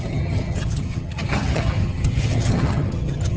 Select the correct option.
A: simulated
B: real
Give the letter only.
A